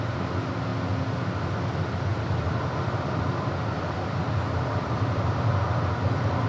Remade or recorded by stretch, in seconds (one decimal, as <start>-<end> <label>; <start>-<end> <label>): 0.0-2.1 recorded; 2.1-5.5 remade; 5.5-6.5 recorded